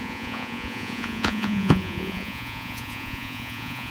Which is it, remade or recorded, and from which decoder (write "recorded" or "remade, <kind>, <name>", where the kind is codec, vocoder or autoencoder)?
remade, vocoder, Vocos